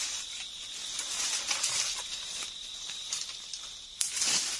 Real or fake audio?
real